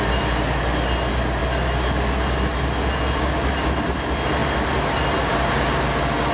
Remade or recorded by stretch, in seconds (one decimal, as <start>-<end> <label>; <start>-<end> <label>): 0.0-6.3 recorded